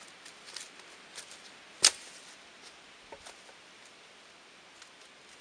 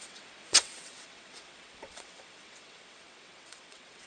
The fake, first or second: second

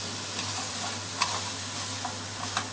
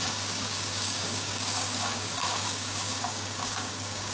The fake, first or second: second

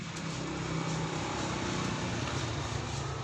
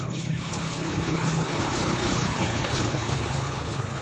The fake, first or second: second